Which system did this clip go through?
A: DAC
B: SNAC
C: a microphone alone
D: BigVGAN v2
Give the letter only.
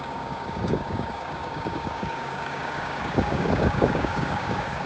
A